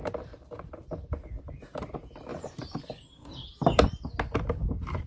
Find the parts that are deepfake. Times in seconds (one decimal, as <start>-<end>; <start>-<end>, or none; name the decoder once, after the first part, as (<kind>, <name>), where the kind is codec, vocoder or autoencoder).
0.0-1.5 (vocoder, BigVGAN v2); 2.3-3.9